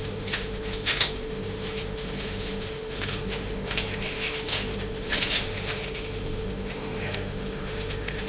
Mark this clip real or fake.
fake